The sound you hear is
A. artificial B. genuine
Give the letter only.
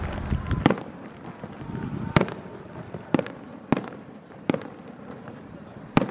B